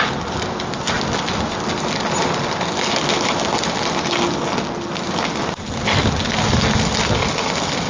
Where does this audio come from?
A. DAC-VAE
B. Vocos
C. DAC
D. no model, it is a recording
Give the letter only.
D